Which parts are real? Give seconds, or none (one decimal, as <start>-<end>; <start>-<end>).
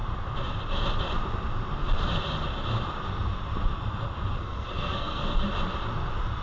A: 0.0-4.4; 5.4-6.4